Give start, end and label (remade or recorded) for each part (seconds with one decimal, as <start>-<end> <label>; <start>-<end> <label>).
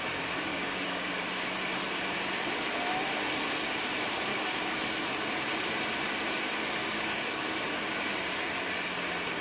0.0-0.5 recorded; 0.5-1.2 remade; 1.2-4.3 recorded; 4.3-4.8 remade; 4.8-6.8 recorded; 6.8-7.4 remade; 7.4-9.4 recorded